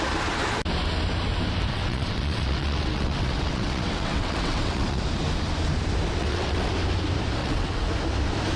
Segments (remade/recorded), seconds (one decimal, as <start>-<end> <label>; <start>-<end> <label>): 0.0-1.7 recorded; 1.7-5.0 remade; 5.0-6.2 recorded; 6.2-6.7 remade; 6.7-7.4 recorded; 7.4-7.9 remade; 7.9-8.6 recorded